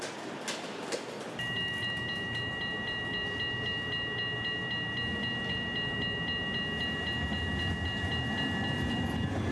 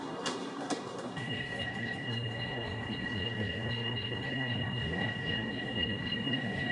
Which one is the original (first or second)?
first